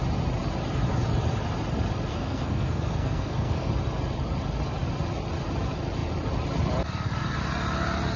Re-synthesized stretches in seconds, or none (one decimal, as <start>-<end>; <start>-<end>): 2.1-3.7